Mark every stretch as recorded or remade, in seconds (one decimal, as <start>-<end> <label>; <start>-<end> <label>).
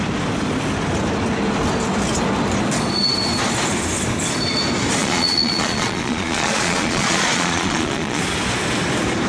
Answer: 0.0-5.0 recorded; 5.0-8.2 remade; 8.2-9.3 recorded